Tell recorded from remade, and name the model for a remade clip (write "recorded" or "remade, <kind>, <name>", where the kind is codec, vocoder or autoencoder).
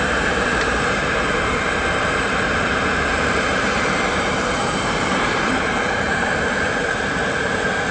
remade, vocoder, BigVGAN v2